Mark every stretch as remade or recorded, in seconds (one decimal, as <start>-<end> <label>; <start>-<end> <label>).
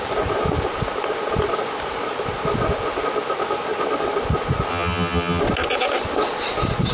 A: 0.0-4.7 recorded; 4.7-5.4 remade; 5.4-6.9 recorded